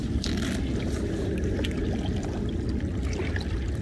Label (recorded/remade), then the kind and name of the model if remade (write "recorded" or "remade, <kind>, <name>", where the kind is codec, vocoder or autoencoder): recorded